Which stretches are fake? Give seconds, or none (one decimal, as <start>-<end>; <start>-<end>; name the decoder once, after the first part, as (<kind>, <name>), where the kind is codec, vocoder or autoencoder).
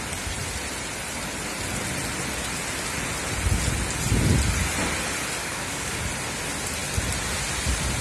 5.4-6.0 (codec, DAC)